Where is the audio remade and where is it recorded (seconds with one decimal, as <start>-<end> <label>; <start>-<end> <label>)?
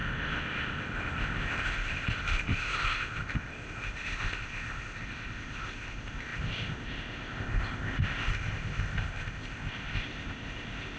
0.0-11.0 remade